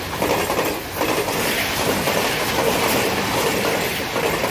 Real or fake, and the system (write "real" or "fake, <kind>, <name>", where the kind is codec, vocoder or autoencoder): real